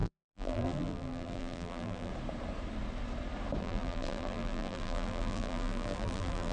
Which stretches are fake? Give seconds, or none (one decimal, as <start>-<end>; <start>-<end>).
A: 0.0-2.1; 3.6-6.5